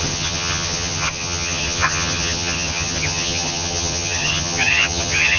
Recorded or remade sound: remade